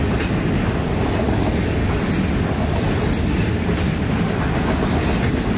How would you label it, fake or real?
real